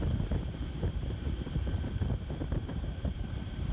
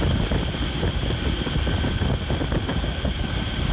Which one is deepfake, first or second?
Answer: first